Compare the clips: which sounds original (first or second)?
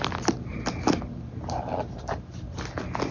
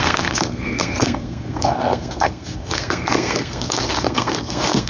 first